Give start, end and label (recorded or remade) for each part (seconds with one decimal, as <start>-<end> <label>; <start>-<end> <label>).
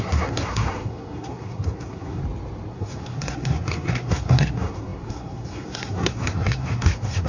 0.0-2.2 remade; 2.2-2.7 recorded; 2.7-7.3 remade